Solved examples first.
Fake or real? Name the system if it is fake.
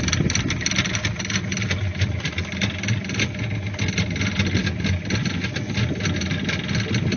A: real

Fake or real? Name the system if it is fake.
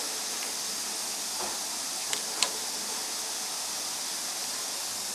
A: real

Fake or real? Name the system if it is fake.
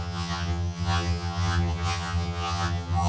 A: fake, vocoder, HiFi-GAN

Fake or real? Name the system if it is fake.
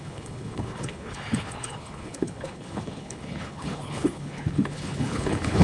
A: fake, codec, HILCodec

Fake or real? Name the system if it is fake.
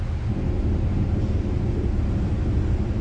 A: real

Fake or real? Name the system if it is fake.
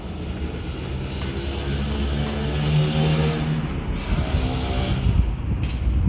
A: real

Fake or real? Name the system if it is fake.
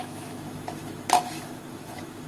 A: fake, autoencoder, DAC-VAE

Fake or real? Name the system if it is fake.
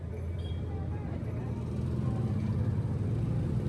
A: fake, vocoder, BigVGAN v2